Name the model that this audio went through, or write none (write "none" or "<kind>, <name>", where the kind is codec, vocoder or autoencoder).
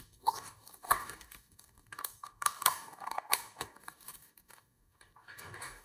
codec, DAC